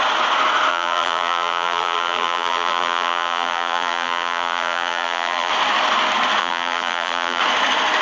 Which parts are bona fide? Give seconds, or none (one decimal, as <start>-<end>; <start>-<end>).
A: 0.0-0.7; 5.5-6.4; 7.4-8.0